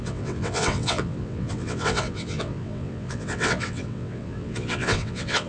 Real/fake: fake